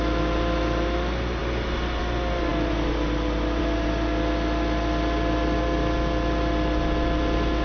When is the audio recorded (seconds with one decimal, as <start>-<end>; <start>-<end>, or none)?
0.0-7.6